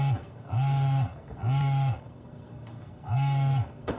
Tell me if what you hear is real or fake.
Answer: fake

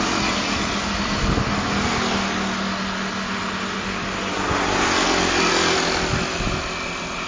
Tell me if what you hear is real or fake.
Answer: real